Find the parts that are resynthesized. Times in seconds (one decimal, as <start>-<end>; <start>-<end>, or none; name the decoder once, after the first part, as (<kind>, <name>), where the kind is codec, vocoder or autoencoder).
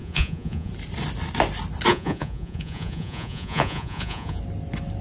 0.0-0.7 (vocoder, Vocos); 1.9-4.4